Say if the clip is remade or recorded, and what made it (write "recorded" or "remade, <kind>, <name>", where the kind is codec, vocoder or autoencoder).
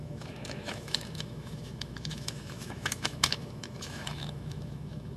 remade, autoencoder, DAC-VAE